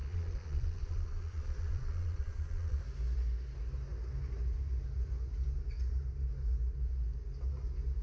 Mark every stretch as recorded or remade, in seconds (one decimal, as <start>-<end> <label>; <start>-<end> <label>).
0.0-2.8 remade; 2.8-8.0 recorded